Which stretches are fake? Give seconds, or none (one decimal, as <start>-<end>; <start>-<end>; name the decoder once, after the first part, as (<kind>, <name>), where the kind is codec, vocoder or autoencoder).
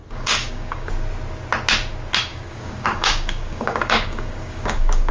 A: 0.0-0.9 (codec, DAC); 2.3-5.1